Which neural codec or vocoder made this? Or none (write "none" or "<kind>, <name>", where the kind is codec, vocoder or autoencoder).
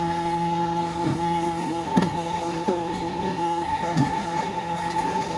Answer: codec, SNAC